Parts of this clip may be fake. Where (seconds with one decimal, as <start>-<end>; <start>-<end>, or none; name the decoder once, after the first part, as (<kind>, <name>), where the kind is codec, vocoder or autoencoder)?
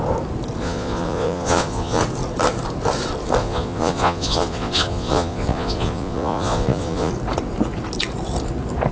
0.6-2.0 (vocoder, Vocos); 3.4-7.1